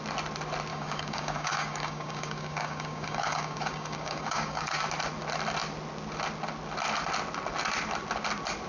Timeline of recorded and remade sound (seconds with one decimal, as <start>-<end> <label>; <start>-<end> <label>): 0.0-0.7 recorded; 0.7-4.8 remade; 4.8-8.7 recorded